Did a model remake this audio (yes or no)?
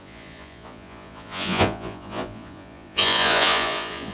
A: yes